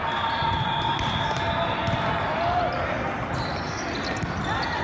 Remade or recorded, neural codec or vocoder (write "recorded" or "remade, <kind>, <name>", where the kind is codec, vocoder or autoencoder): recorded